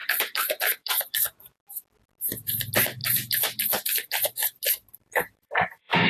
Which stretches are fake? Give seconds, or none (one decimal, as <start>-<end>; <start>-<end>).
0.0-1.6; 3.0-6.1